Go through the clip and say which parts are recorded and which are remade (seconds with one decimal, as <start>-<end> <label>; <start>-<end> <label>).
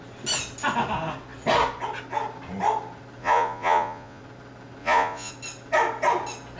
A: 0.0-3.2 recorded; 3.2-4.2 remade; 4.2-4.8 recorded; 4.8-5.3 remade; 5.3-6.6 recorded